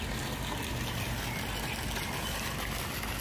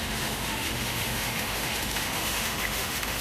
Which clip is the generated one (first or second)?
second